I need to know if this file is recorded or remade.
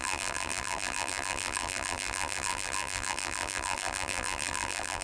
remade